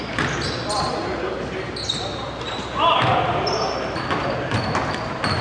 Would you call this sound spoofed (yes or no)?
no